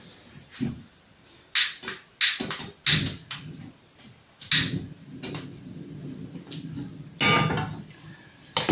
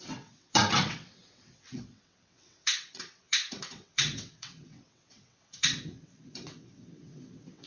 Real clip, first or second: first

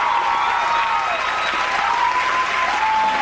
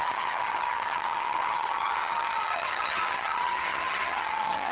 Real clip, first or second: first